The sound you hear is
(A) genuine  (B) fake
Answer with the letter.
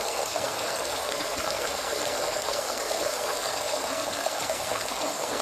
B